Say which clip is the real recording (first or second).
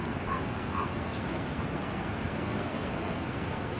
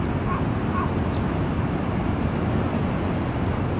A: second